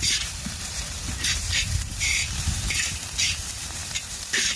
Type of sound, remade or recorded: remade